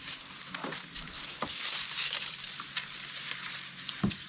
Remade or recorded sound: recorded